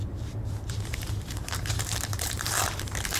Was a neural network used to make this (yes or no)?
yes